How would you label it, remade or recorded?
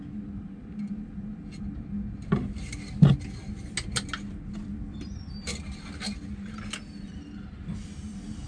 recorded